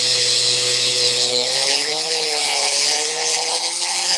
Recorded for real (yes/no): no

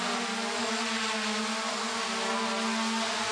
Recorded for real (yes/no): yes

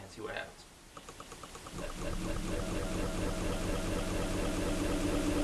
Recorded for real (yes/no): yes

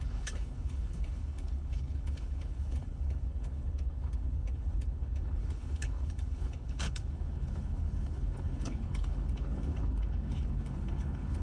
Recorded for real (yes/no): no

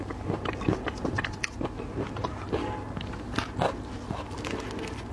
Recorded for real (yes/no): yes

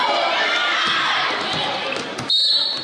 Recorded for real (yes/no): yes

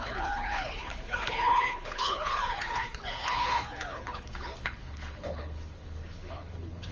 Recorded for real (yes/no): no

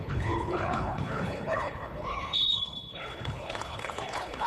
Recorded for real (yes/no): no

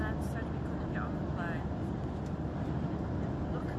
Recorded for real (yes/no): yes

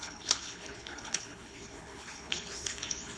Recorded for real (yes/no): no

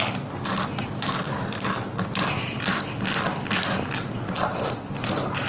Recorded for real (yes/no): yes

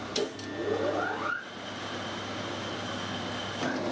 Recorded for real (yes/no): yes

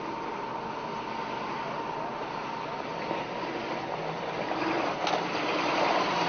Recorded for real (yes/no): yes